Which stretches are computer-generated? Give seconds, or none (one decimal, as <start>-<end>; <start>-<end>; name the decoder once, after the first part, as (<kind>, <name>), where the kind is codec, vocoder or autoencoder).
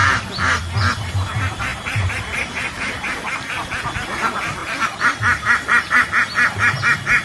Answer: 1.7-3.5 (vocoder, BigVGAN v2); 4.6-6.1